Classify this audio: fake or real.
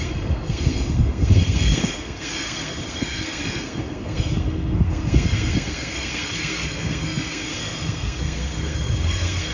fake